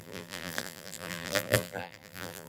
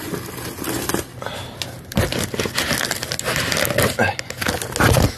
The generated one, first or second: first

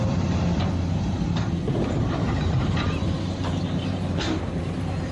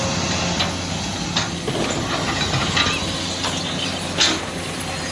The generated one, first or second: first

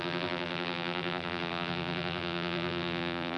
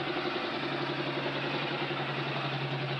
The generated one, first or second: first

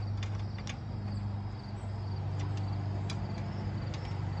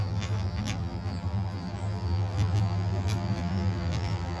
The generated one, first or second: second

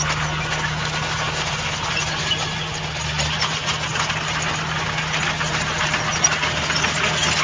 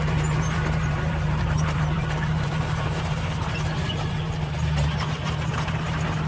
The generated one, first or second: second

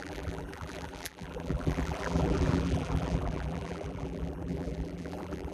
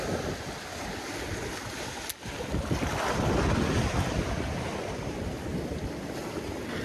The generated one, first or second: first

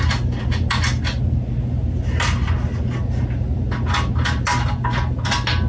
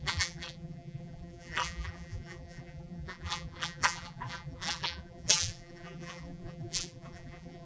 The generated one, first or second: second